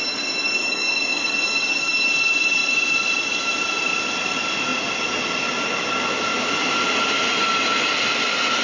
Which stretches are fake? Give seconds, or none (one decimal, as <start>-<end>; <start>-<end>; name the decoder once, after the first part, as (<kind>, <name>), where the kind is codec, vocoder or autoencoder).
0.6-2.1 (codec, DAC)